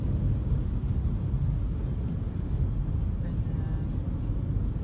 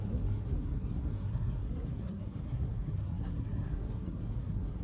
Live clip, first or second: first